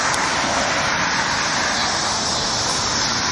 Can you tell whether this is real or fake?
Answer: real